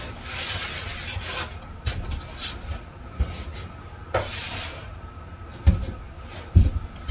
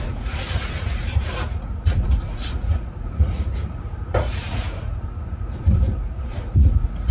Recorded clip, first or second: first